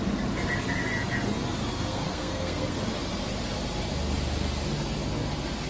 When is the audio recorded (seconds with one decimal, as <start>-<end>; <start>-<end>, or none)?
0.0-1.6; 2.8-5.7

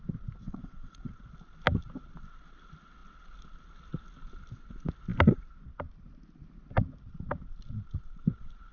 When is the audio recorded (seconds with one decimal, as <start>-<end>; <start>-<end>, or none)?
0.0-0.4; 1.1-8.7

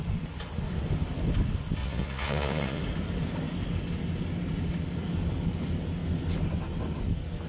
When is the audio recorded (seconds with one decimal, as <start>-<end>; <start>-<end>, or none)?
0.0-1.8; 2.8-7.5

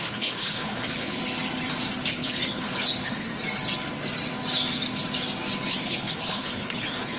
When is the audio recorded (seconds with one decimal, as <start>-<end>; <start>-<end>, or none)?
1.2-2.1; 3.3-5.7